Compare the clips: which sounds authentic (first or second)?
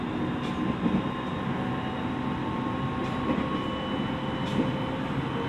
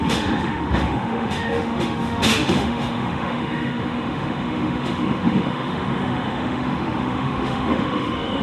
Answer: first